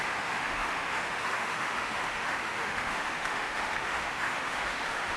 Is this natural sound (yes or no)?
no